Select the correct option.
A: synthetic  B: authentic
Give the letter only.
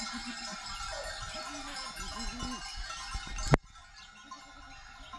B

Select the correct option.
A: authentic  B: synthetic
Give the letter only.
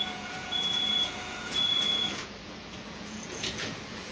B